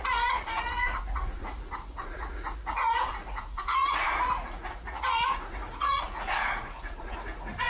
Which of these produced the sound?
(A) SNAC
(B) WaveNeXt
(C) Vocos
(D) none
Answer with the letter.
C